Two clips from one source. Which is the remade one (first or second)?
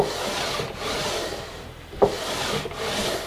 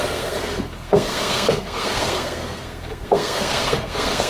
second